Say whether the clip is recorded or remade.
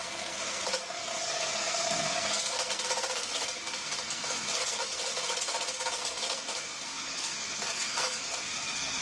remade